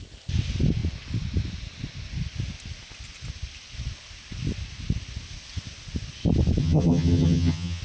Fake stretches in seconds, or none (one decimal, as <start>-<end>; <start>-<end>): 6.6-7.8